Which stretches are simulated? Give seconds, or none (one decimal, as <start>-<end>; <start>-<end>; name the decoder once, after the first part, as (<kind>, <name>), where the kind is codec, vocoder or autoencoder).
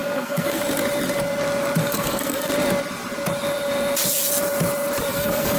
0.0-0.6 (codec, SNAC); 1.8-2.5; 5.1-5.6